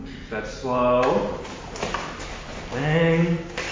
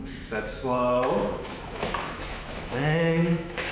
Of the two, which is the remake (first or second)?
second